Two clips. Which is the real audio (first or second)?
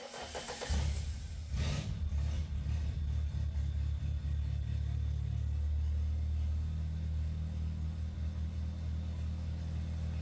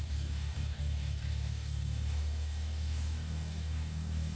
first